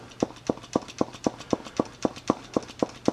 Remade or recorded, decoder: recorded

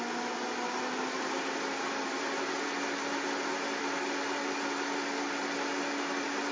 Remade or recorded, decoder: recorded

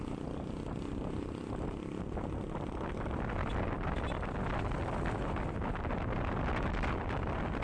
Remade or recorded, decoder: recorded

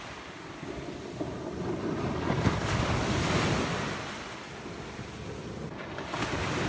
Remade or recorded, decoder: recorded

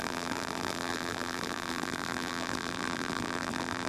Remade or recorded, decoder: remade, vocoder, BigVGAN v2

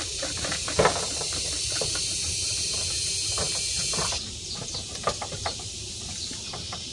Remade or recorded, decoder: remade, vocoder, BigVGAN v2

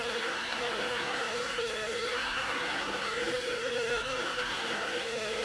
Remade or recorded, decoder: remade, codec, SNAC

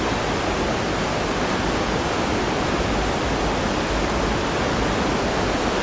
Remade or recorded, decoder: recorded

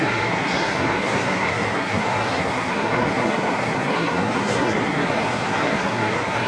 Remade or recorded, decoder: remade, codec, SNAC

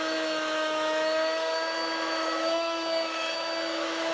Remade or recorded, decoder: remade, autoencoder, DAC-VAE